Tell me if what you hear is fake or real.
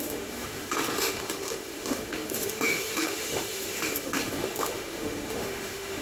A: fake